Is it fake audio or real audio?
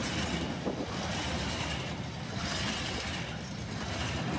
real